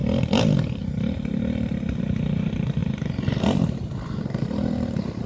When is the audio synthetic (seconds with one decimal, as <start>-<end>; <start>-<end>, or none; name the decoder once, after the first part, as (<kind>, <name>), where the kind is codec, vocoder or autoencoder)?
none